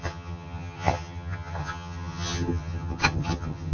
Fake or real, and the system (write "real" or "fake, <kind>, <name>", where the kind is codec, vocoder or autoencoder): fake, vocoder, HiFi-GAN